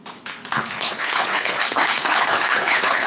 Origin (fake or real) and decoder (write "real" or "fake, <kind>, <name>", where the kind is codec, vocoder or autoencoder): fake, codec, HILCodec